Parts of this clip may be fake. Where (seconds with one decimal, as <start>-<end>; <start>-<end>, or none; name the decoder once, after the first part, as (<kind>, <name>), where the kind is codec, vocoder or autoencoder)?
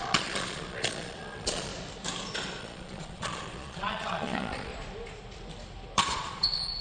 0.0-1.7 (vocoder, Vocos); 2.6-4.7; 6.0-6.8